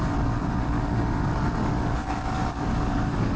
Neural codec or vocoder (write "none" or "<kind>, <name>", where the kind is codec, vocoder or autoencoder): codec, DAC